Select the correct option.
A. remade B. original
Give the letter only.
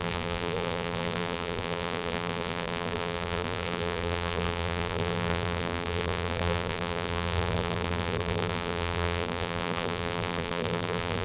A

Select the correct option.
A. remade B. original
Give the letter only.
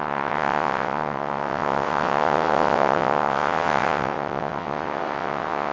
A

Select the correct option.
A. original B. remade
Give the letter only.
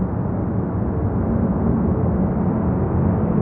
A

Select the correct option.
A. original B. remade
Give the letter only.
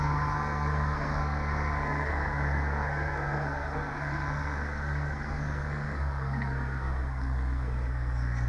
B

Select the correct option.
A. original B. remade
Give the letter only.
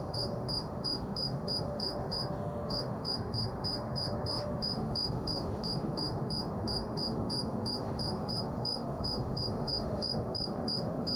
B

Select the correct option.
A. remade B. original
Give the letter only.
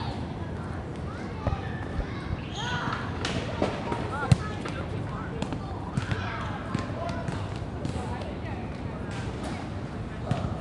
B